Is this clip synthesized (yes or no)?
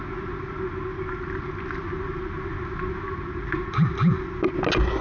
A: no